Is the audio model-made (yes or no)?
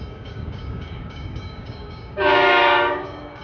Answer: yes